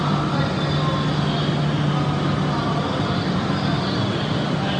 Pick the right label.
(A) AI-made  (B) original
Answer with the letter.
B